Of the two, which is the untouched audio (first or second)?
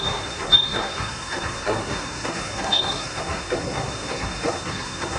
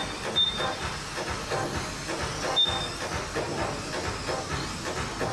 second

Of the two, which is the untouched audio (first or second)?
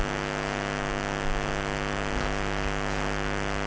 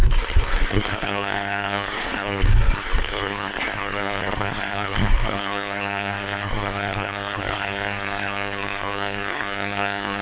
first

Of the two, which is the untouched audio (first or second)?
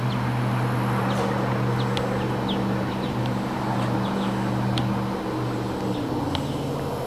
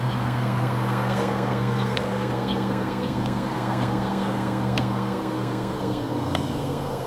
first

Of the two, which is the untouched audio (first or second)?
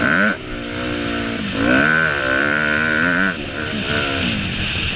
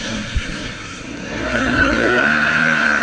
first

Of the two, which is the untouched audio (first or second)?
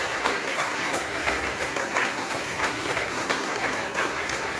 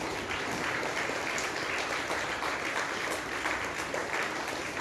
second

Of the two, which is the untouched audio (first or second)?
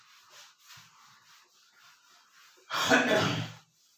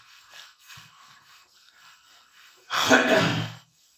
first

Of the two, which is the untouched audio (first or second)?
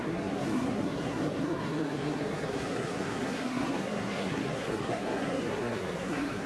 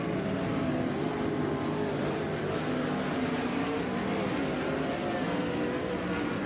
second